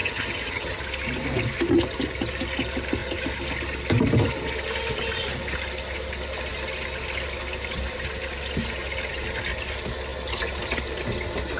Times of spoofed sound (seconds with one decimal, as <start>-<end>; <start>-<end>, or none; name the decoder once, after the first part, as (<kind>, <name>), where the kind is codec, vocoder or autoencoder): 0.0-0.8 (vocoder, HiFi-GAN)